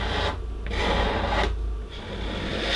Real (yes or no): yes